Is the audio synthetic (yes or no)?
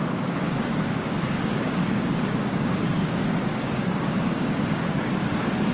yes